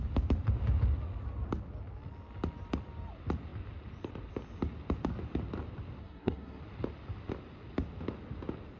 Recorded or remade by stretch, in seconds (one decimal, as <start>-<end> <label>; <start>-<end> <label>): 0.0-6.0 recorded; 6.0-6.6 remade; 6.6-8.8 recorded